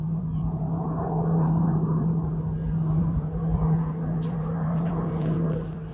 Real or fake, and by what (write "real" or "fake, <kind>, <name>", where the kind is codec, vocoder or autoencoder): fake, vocoder, BigVGAN v2